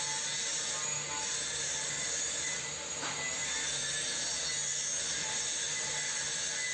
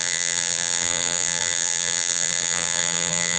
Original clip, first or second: first